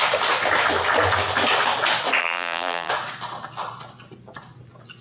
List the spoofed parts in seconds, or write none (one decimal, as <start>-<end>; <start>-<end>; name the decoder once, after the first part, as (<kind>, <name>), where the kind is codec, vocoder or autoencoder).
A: 2.2-2.9 (vocoder, BigVGAN v2)